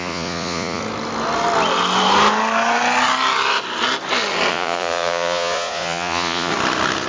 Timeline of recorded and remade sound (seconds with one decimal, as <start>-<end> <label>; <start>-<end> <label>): 0.0-0.8 remade; 0.8-4.5 recorded; 4.5-6.5 remade; 6.5-7.1 recorded